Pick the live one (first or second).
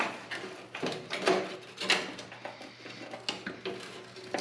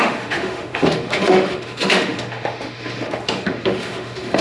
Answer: first